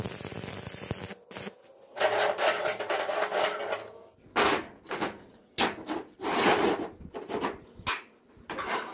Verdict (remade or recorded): recorded